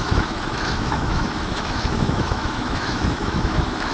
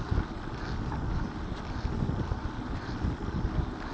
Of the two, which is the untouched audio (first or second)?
second